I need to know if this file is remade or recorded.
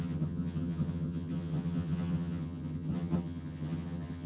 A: remade